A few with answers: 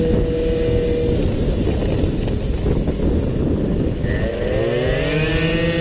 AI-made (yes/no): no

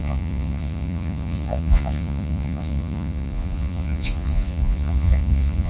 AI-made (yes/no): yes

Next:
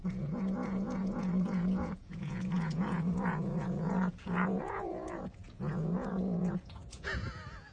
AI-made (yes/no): yes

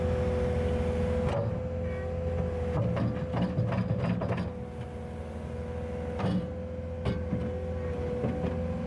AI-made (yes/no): no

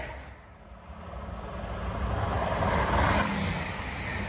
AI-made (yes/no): no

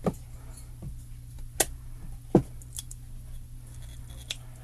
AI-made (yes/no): no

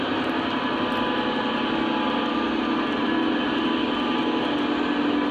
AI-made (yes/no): no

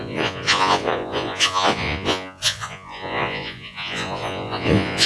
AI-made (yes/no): yes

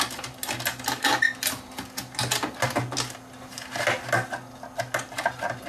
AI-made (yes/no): no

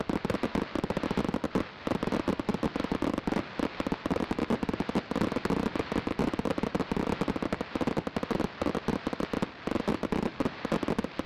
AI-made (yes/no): no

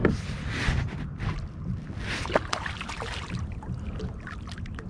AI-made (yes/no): no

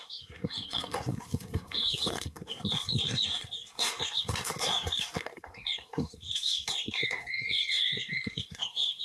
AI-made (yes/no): yes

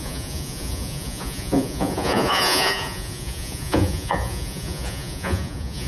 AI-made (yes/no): yes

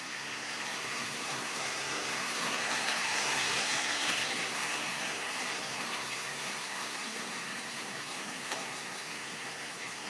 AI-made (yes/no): yes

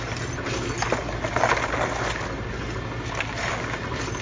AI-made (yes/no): no